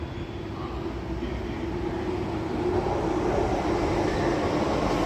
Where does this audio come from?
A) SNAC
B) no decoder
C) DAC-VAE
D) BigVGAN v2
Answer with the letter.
B